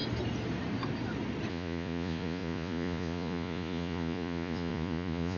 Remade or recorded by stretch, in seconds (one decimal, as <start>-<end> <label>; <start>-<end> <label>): 0.0-1.5 recorded; 1.5-5.4 remade